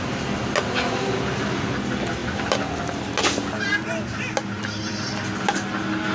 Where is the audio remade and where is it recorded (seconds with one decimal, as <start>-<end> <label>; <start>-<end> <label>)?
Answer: 0.0-6.1 recorded